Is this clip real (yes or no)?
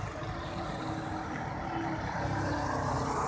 yes